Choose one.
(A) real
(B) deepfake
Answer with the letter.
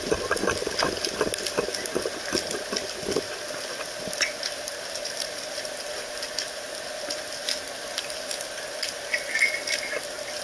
A